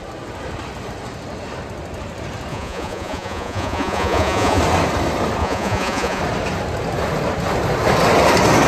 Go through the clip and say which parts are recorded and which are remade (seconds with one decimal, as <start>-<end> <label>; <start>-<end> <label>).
0.0-2.5 recorded; 2.5-4.6 remade; 4.6-5.4 recorded; 5.4-6.2 remade; 6.2-8.7 recorded